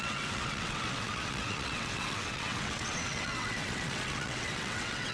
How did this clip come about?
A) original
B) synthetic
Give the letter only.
B